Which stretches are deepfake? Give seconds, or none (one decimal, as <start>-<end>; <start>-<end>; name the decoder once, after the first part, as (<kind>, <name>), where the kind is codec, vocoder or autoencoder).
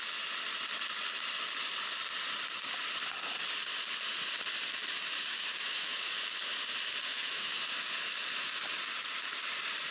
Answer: 5.3-6.5 (autoencoder, DAC-VAE); 7.1-7.6